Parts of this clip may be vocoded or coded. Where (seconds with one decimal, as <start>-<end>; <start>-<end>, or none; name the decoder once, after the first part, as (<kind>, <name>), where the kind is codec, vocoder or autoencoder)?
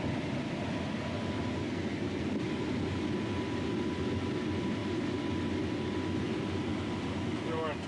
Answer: 1.6-2.3 (codec, SNAC)